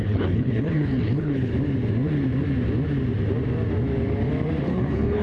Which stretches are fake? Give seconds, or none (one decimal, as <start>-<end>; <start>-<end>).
0.0-1.5; 4.6-5.2